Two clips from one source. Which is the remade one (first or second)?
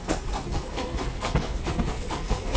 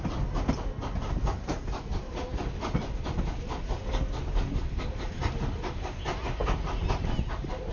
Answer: first